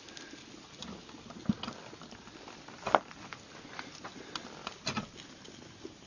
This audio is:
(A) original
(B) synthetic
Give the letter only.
A